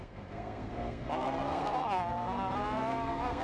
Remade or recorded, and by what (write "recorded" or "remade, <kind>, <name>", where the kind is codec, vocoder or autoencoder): remade, codec, SNAC